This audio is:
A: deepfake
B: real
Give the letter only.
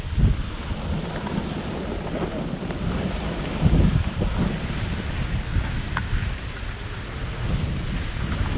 B